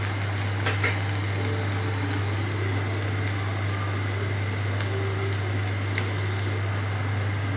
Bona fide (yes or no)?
yes